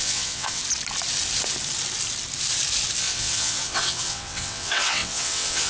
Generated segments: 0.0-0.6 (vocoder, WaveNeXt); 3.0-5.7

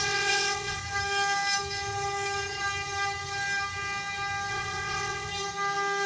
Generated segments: 0.0-0.8 (vocoder, WaveNeXt); 4.5-5.3